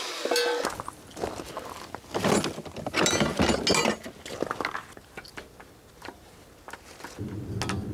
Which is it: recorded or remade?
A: recorded